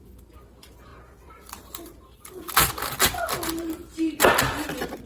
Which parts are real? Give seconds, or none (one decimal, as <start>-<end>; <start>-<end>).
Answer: 0.0-0.9; 2.7-5.1